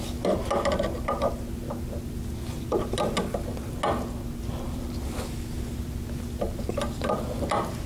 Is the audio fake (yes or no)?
no